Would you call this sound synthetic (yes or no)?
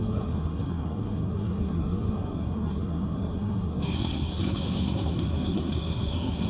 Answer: yes